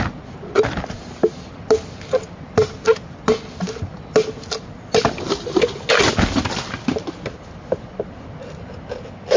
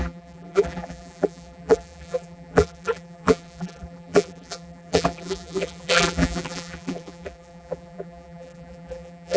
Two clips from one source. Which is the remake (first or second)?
second